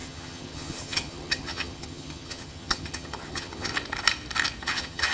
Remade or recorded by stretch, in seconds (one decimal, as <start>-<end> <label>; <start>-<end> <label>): 0.0-3.7 remade; 3.7-4.6 recorded; 4.6-5.1 remade